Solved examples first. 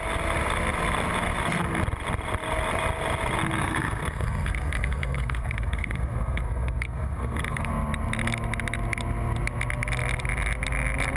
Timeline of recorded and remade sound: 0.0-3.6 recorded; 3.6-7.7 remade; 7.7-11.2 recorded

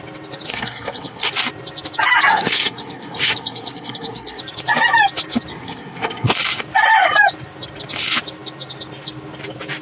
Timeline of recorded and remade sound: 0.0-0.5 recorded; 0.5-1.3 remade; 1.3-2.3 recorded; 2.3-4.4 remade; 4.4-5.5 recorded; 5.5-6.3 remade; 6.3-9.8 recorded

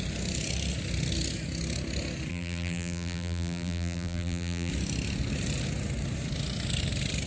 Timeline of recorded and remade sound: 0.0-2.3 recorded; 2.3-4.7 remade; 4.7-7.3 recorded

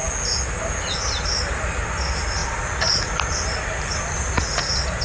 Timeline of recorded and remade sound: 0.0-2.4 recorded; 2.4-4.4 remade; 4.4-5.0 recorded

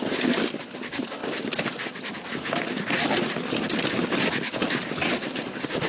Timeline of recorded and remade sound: 0.0-5.9 recorded